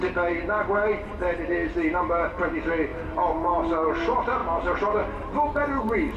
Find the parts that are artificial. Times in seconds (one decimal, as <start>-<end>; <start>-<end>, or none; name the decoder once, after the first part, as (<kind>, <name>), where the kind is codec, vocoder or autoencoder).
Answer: 2.9-3.5 (vocoder, BigVGAN v2)